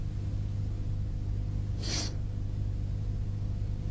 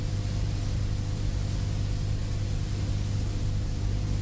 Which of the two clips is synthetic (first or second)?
second